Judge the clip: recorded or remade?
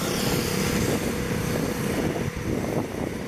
recorded